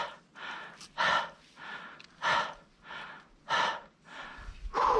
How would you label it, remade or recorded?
recorded